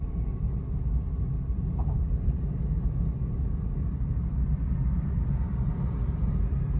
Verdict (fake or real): real